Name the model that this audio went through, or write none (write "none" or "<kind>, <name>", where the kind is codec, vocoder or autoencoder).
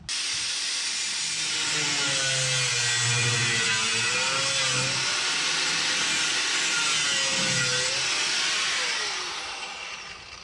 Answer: none